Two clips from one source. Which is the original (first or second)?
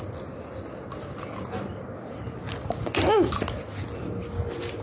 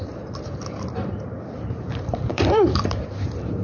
first